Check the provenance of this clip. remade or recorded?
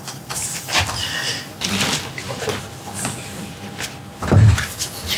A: recorded